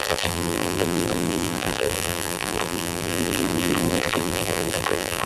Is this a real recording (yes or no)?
no